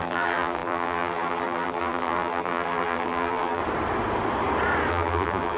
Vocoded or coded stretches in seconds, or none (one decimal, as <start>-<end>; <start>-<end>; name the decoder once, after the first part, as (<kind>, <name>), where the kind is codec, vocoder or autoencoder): 0.0-3.6 (vocoder, BigVGAN v2); 4.9-5.6